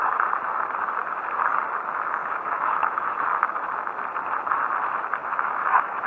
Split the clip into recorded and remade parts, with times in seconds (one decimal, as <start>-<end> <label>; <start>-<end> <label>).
0.0-2.2 recorded; 2.2-3.1 remade; 3.1-5.2 recorded; 5.2-6.1 remade